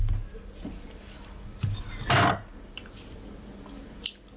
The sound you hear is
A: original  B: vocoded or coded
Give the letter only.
A